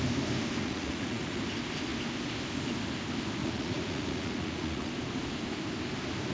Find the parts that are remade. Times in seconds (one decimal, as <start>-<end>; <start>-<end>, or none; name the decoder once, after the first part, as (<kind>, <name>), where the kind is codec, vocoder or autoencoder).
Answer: 0.6-1.4 (vocoder, Vocos); 3.4-4.9